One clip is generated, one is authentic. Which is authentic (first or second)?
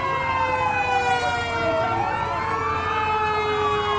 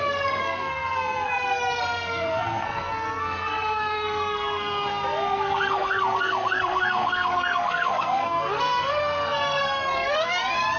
first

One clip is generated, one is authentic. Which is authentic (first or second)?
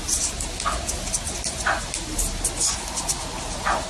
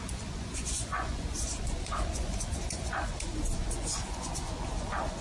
first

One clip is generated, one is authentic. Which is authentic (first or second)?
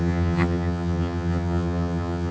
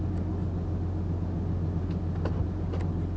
second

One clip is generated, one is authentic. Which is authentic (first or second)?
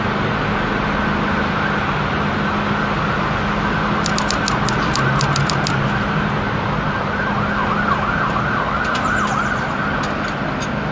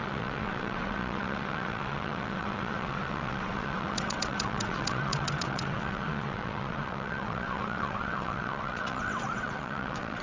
first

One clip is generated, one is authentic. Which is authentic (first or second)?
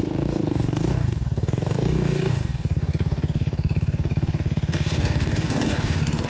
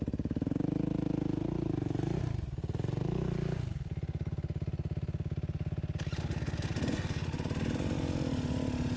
second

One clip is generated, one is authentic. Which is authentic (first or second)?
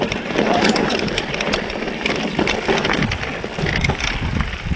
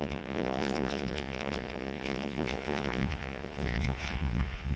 first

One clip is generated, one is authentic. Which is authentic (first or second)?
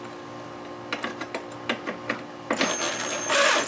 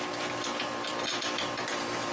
first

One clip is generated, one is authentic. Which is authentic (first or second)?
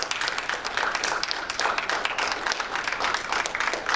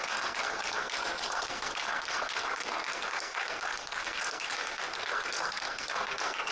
first